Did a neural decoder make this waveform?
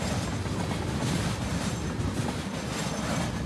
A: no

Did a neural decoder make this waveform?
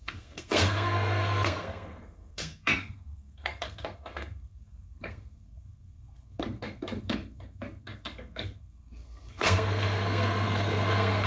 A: yes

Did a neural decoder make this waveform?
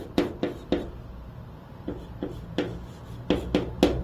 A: no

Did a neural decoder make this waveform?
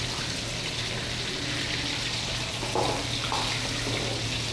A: no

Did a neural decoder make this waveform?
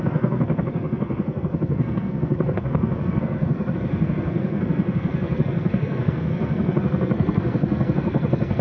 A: yes